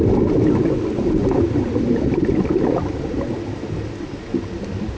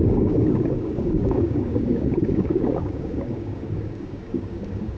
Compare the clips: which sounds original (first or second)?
first